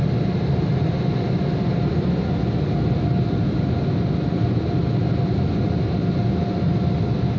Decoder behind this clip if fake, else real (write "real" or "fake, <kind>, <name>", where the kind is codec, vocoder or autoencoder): real